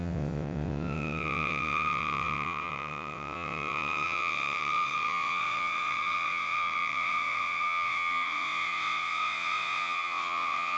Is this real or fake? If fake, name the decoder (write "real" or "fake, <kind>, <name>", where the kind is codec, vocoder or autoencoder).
fake, vocoder, WaveNeXt